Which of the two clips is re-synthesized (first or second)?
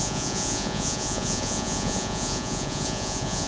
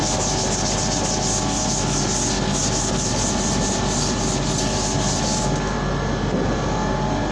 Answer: first